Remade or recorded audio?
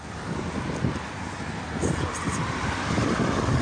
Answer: remade